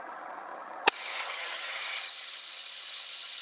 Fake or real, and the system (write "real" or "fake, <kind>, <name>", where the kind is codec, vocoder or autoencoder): fake, vocoder, HiFi-GAN